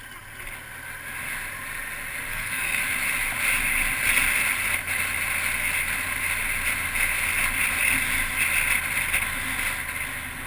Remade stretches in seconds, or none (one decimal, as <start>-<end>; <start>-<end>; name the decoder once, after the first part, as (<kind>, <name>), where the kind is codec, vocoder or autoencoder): 2.3-2.8 (codec, SNAC)